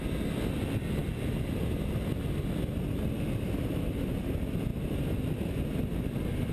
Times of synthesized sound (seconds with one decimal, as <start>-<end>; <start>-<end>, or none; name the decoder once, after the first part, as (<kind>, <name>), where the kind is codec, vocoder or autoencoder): none